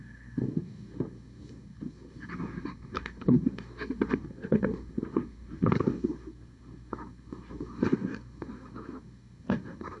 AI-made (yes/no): yes